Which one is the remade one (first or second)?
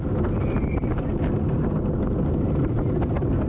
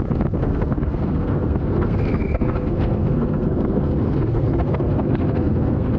second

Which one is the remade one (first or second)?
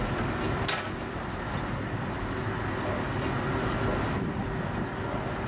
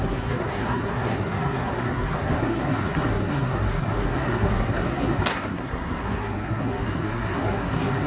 second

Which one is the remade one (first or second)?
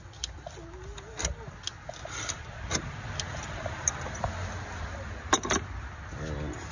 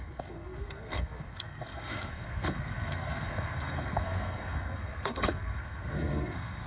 second